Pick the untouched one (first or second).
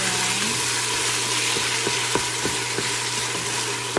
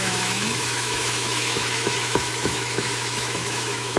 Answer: first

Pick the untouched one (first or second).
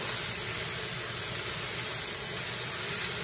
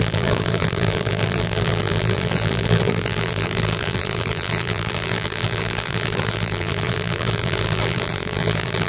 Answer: first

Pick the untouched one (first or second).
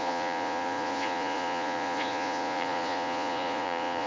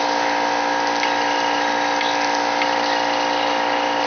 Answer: second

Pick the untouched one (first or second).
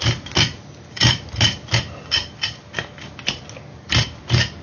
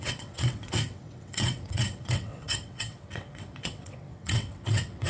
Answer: first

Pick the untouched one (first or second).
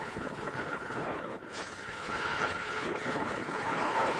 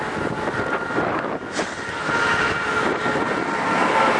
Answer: second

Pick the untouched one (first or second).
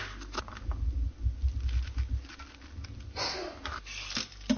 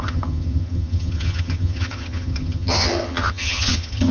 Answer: first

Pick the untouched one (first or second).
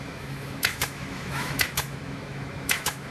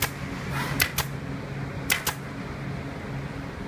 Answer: second